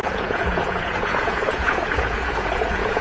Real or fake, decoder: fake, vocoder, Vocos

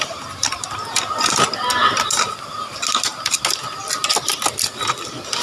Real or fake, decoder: real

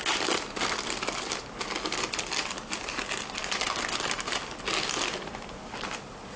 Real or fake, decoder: real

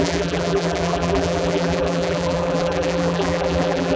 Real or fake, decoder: fake, vocoder, BigVGAN v2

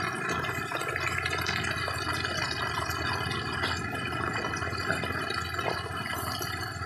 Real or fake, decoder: real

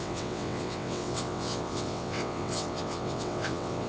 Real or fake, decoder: fake, vocoder, WaveNeXt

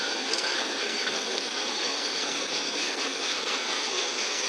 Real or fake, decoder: fake, codec, SNAC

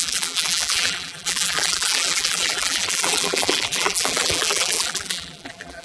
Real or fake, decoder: fake, vocoder, BigVGAN v2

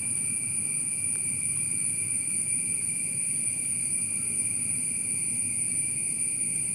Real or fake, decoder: real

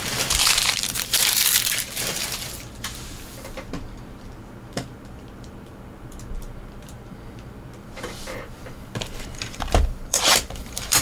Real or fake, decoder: fake, vocoder, BigVGAN v2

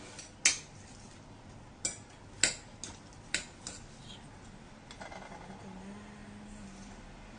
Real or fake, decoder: real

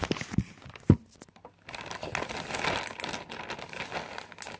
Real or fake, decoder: real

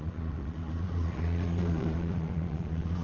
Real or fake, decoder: fake, vocoder, Vocos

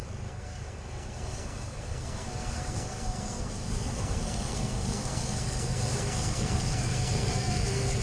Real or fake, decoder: fake, codec, SNAC